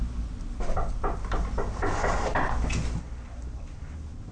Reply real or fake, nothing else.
real